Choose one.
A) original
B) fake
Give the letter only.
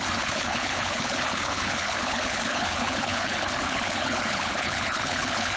B